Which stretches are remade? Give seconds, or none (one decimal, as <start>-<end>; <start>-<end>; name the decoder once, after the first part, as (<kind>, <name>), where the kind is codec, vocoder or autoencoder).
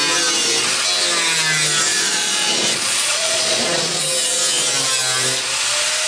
1.9-4.0 (vocoder, Vocos)